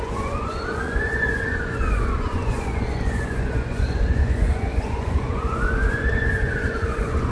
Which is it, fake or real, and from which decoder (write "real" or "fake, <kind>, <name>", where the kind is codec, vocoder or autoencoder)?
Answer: fake, vocoder, Vocos